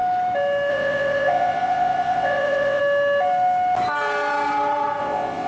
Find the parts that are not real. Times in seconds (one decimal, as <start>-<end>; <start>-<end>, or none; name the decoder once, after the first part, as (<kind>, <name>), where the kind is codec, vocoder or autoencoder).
0.7-2.8 (vocoder, WaveNeXt); 5.0-5.5